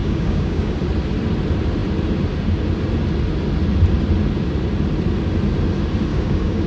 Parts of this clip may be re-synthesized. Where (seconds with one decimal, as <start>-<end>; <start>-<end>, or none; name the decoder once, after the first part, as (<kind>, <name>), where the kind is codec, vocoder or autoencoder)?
0.0-0.7 (codec, DAC); 6.1-6.7